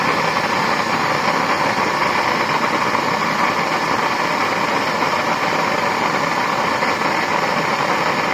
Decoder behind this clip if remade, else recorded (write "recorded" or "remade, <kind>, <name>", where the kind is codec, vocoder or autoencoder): recorded